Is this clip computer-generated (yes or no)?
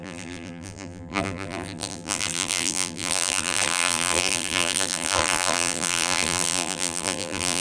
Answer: yes